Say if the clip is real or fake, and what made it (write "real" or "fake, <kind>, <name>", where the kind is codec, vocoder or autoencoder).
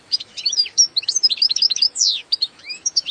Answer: fake, autoencoder, DAC-VAE